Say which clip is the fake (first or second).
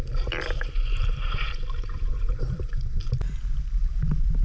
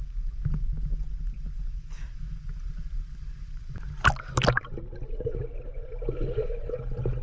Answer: first